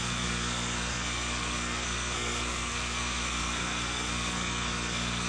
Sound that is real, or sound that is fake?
fake